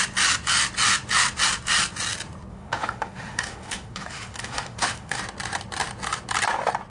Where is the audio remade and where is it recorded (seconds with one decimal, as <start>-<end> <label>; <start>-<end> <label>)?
0.0-2.5 recorded; 2.5-5.2 remade; 5.2-6.9 recorded